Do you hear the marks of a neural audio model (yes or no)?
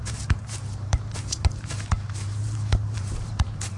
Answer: yes